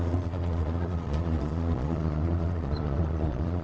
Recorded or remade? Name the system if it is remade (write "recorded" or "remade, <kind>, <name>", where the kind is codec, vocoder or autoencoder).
remade, vocoder, Vocos